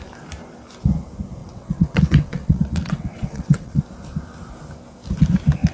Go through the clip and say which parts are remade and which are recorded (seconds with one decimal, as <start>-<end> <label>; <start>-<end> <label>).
0.0-1.4 recorded; 1.4-3.8 remade; 3.8-5.7 recorded